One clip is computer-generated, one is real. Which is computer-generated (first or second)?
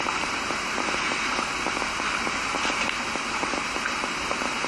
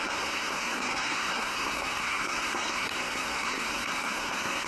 second